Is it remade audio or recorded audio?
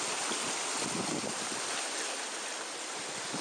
recorded